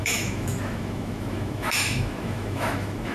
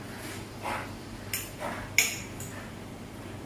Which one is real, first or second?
second